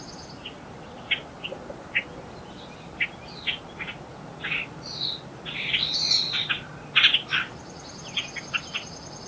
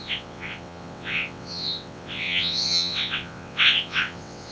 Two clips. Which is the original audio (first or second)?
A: first